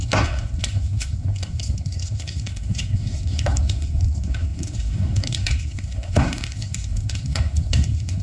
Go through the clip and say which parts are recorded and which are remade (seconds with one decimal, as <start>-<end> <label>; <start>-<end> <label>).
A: 0.0-8.2 remade